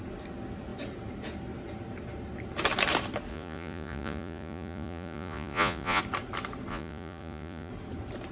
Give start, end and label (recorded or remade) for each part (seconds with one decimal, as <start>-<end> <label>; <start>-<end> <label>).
0.0-3.3 recorded; 3.3-6.0 remade; 6.0-6.7 recorded; 6.7-7.7 remade; 7.7-8.3 recorded